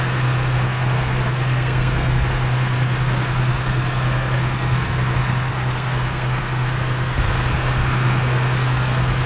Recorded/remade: remade